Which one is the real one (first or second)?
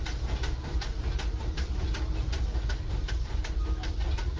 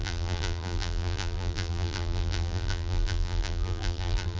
first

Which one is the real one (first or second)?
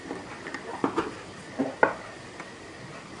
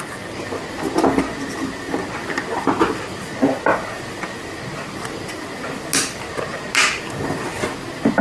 second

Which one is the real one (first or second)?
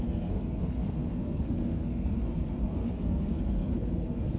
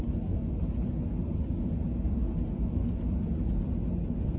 second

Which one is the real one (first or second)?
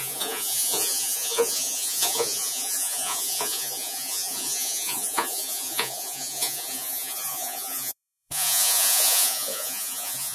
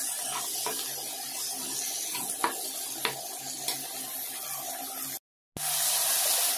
second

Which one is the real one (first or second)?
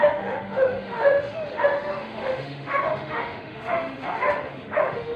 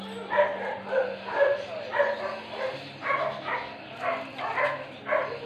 second